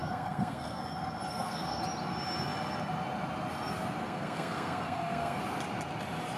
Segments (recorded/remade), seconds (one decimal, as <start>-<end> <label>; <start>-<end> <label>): 0.0-0.8 remade; 0.8-1.3 recorded; 1.3-1.8 remade; 1.8-4.0 recorded; 4.0-5.4 remade; 5.4-6.4 recorded